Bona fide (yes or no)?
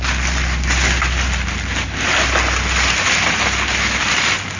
yes